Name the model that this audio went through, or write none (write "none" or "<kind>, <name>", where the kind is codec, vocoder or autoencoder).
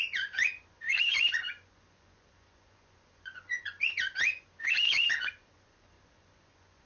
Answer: vocoder, Vocos